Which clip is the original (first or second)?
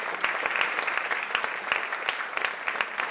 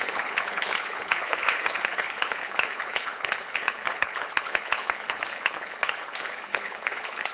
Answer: first